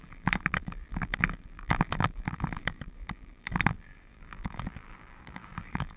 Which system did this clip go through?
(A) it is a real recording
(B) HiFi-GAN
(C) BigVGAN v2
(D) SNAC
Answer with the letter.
C